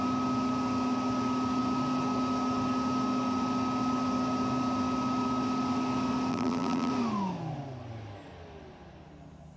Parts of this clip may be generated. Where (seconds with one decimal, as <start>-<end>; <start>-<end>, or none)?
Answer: 6.3-6.9